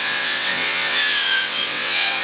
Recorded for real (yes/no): no